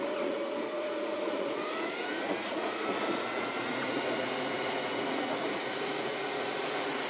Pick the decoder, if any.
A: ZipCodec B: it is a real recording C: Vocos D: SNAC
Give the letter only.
C